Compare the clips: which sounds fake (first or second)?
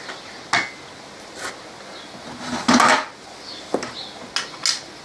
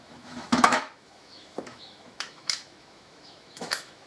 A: second